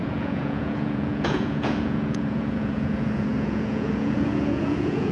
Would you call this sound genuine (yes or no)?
no